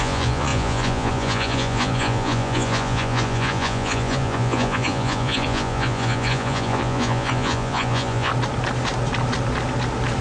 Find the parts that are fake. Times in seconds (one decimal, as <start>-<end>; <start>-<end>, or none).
0.0-8.3